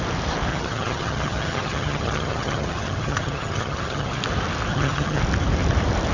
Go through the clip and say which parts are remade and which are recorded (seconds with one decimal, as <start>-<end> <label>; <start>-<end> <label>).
0.0-0.5 recorded; 0.5-4.2 remade; 4.2-4.7 recorded; 4.7-5.2 remade; 5.2-6.1 recorded